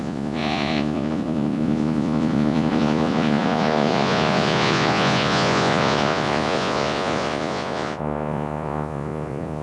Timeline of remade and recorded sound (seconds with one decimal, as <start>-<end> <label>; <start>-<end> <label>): 0.0-9.6 remade